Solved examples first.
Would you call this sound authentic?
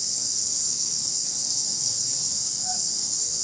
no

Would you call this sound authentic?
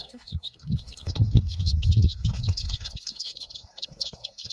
no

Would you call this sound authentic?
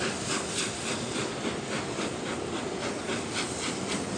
yes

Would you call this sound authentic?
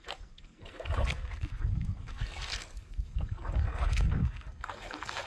no